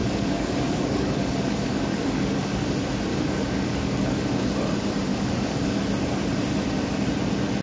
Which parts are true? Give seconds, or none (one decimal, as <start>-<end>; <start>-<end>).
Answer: 2.7-3.1; 4.4-5.1; 5.8-7.6